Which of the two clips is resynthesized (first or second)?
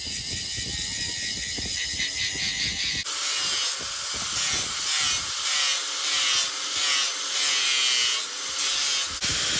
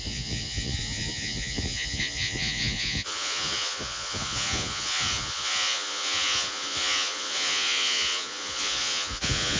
second